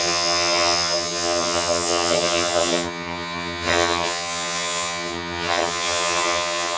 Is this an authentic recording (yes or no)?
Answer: no